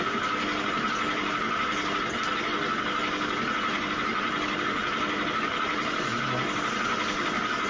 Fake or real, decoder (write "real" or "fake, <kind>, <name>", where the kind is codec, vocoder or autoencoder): real